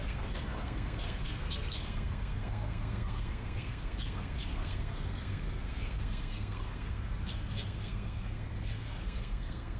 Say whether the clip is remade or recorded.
remade